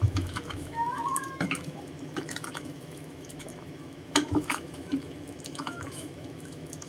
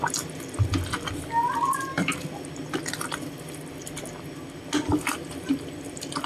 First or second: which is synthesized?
first